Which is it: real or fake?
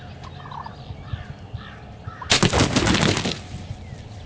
real